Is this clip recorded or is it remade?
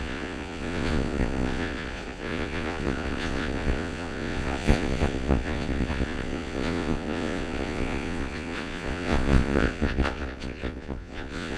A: remade